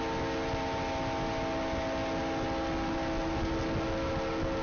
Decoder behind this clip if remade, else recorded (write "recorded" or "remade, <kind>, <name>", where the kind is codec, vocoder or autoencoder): recorded